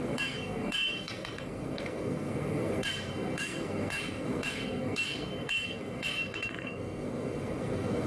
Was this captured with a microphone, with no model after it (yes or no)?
no